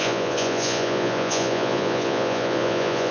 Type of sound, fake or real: fake